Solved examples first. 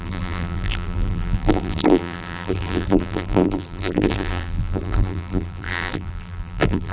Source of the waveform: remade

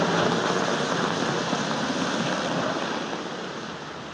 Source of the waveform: recorded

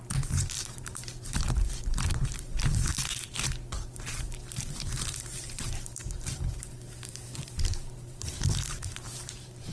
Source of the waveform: remade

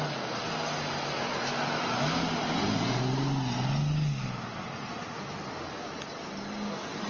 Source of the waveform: recorded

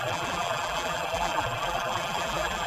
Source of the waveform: remade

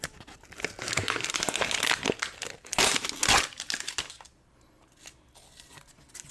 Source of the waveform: recorded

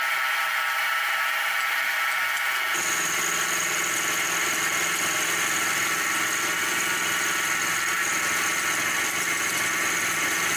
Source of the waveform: recorded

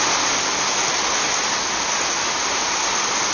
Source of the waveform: recorded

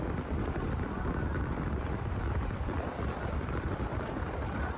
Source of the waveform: remade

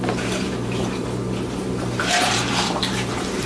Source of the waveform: remade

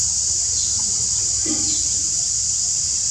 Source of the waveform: recorded